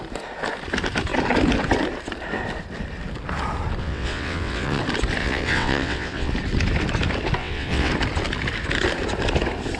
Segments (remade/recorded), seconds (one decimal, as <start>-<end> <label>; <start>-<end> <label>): 0.0-3.8 recorded; 3.8-4.8 remade; 4.8-5.2 recorded; 5.2-6.3 remade; 6.3-7.4 recorded; 7.4-7.9 remade; 7.9-9.8 recorded